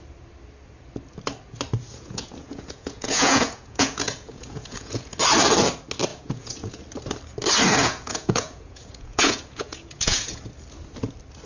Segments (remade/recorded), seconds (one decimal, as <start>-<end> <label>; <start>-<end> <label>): 0.0-1.9 recorded; 1.9-5.1 remade; 5.1-6.1 recorded; 6.1-6.8 remade; 6.8-7.8 recorded; 7.8-10.4 remade; 10.4-11.5 recorded